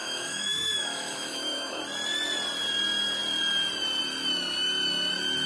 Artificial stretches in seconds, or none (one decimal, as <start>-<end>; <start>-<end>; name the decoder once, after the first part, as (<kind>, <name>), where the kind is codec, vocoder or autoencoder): 0.0-1.8 (autoencoder, DAC-VAE)